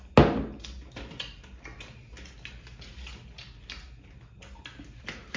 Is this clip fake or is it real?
real